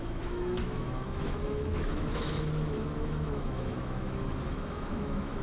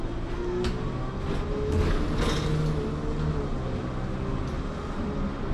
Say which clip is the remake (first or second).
first